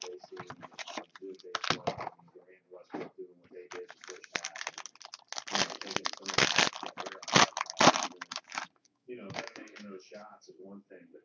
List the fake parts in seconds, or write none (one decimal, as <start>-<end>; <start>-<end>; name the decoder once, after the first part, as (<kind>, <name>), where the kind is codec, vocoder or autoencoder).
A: 8.8-10.5 (autoencoder, DAC-VAE)